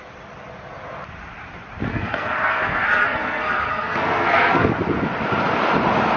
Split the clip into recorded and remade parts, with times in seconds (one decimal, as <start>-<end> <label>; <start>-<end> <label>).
0.0-1.9 recorded; 1.9-4.7 remade; 4.7-6.2 recorded